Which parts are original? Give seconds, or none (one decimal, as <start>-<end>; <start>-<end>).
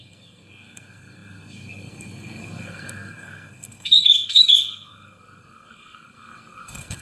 none